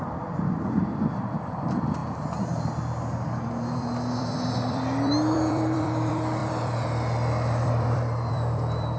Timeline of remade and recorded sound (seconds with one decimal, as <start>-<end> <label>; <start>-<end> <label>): 0.0-2.0 remade; 2.0-3.5 recorded; 3.5-9.0 remade